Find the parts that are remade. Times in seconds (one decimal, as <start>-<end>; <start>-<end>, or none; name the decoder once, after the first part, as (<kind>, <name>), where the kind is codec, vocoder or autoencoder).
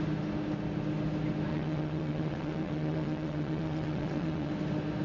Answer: 1.5-4.5 (vocoder, WaveNeXt)